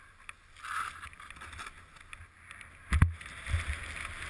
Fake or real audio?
real